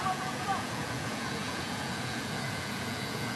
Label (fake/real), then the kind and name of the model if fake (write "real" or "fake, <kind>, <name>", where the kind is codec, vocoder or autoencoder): fake, vocoder, Vocos